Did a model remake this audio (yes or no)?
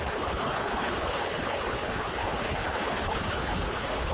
yes